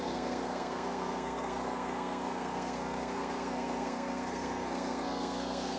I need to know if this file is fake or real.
fake